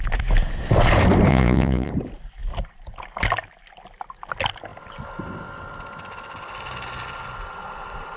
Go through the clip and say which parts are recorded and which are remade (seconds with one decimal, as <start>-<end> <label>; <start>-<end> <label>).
0.0-1.3 recorded; 1.3-1.9 remade; 1.9-8.2 recorded